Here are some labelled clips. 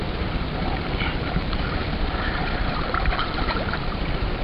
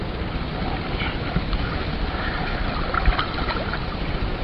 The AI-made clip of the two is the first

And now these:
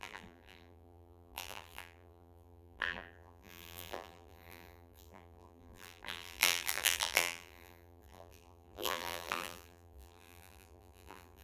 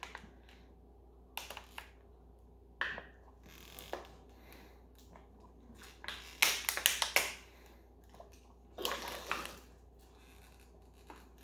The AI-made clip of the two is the first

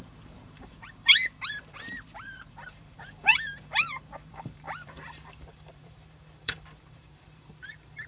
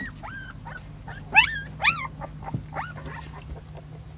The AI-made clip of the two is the first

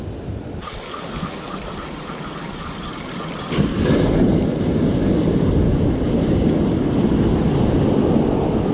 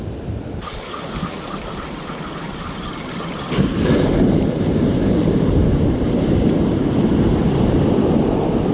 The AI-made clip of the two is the second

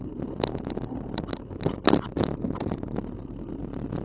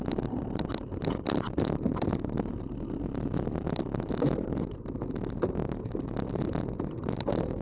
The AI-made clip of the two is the second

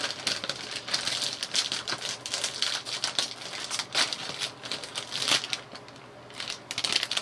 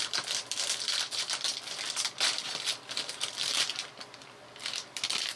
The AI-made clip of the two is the second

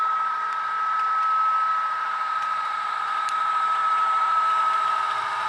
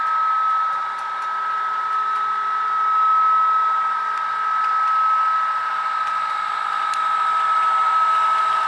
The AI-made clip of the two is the first